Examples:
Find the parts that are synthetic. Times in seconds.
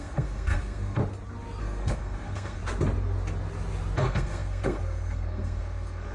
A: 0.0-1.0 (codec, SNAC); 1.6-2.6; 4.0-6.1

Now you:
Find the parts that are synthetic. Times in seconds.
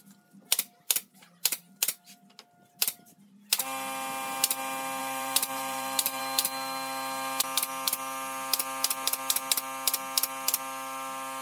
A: 1.2-1.8 (vocoder, BigVGAN v2); 5.0-6.2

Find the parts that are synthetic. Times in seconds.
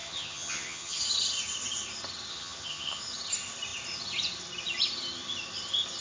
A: 0.0-1.0 (vocoder, HiFi-GAN); 2.3-3.0